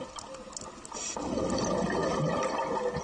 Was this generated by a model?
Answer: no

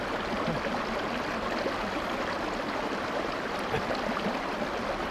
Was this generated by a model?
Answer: no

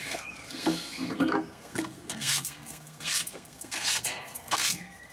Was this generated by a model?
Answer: yes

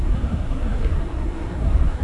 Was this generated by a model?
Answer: yes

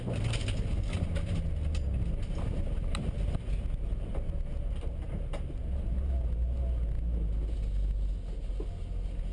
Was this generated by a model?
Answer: no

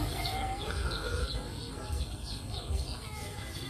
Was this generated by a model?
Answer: yes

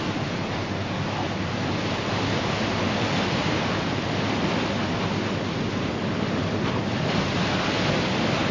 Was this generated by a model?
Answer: no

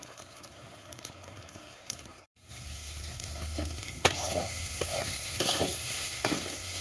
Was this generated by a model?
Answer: yes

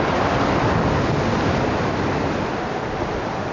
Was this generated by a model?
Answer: no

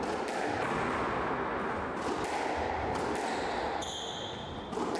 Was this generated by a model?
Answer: no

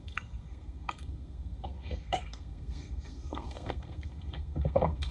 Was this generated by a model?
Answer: yes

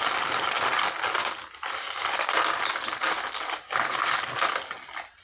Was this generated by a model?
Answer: no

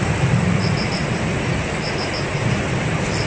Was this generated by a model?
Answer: no